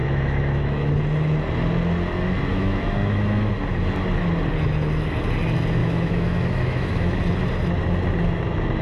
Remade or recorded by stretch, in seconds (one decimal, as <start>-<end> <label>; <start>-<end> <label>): 0.0-0.9 remade; 0.9-2.5 recorded; 2.5-3.5 remade; 3.5-5.8 recorded; 5.8-7.2 remade; 7.2-8.8 recorded